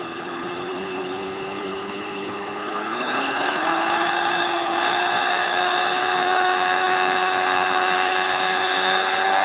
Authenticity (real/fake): fake